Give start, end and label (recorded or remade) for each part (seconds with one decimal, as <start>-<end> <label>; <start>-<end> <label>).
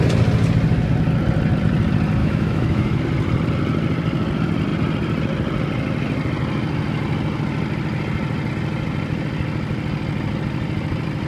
0.0-2.2 recorded; 2.2-3.0 remade; 3.0-11.3 recorded